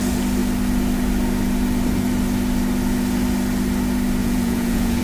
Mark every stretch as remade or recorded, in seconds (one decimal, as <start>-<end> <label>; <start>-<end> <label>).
0.0-4.2 recorded; 4.2-5.0 remade